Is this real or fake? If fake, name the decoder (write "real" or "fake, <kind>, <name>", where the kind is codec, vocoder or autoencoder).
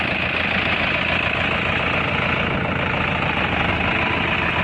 real